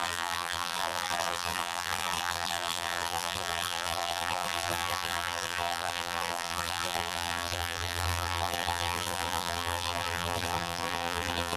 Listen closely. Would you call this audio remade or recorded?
remade